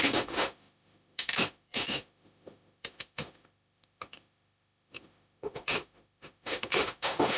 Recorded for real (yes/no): no